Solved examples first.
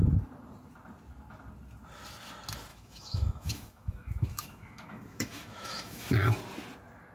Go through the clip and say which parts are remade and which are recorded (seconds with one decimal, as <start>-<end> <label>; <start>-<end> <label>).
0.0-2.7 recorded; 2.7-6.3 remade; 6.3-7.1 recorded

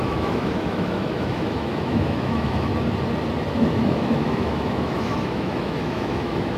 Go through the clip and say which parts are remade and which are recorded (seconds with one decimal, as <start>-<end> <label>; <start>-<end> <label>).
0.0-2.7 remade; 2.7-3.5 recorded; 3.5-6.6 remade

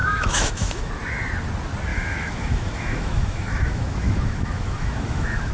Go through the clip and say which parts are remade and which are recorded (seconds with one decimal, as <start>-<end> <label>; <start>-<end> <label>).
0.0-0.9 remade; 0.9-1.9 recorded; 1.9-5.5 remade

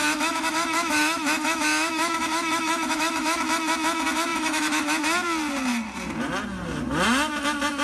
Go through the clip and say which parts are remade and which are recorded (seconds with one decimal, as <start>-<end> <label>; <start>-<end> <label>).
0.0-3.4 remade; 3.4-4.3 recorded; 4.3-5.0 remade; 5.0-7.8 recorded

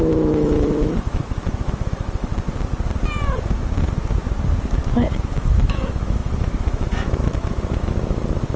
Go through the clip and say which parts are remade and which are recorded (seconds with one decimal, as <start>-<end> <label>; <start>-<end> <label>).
0.0-2.3 remade; 2.3-5.3 recorded; 5.3-8.6 remade

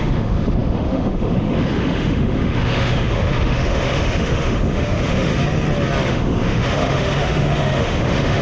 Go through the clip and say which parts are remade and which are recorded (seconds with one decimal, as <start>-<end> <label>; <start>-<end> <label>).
0.0-5.3 remade; 5.3-6.1 recorded; 6.1-8.4 remade

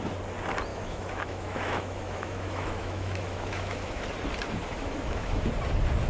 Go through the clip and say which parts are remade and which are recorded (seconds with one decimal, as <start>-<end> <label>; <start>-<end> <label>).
0.0-0.7 recorded; 0.7-4.0 remade; 4.0-4.6 recorded; 4.6-5.4 remade; 5.4-6.1 recorded

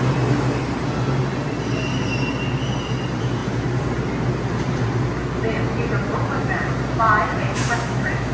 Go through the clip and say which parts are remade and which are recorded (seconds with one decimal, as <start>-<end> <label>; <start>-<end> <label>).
0.0-7.4 recorded; 7.4-8.3 remade